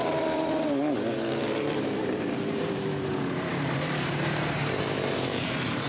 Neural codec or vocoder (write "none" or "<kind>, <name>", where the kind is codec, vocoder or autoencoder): vocoder, BigVGAN v2